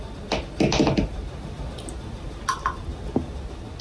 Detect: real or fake real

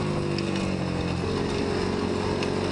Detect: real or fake real